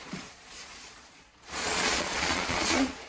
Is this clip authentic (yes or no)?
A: no